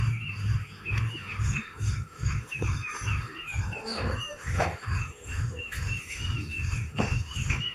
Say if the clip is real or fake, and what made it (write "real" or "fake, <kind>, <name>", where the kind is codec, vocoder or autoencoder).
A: fake, autoencoder, DAC-VAE